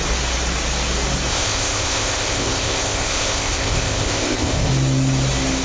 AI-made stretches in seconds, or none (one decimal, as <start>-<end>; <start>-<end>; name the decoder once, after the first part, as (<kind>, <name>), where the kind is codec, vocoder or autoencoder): 1.3-4.7 (codec, ZipCodec)